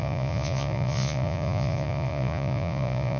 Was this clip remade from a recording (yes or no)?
yes